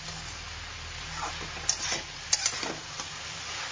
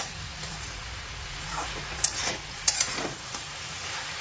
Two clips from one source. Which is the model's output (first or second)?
second